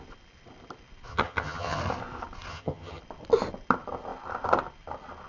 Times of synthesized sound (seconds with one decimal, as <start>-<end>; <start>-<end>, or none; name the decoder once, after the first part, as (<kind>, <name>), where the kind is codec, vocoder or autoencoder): 1.1-1.8 (vocoder, HiFi-GAN); 2.5-3.0